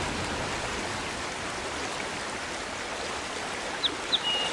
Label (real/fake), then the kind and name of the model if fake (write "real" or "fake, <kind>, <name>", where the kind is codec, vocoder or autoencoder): real